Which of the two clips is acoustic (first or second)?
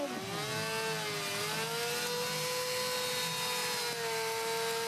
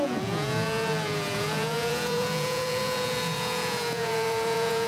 first